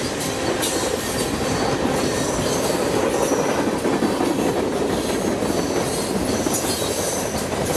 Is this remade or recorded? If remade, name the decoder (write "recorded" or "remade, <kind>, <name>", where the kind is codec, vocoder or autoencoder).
recorded